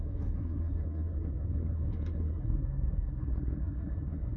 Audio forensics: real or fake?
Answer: fake